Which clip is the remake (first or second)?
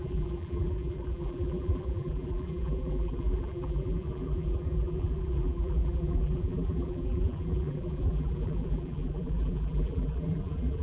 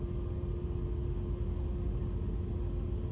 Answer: first